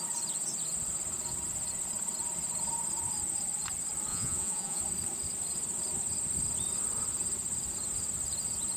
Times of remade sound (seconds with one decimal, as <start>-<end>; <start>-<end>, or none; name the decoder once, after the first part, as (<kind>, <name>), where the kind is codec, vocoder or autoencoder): 4.1-4.8 (vocoder, Vocos)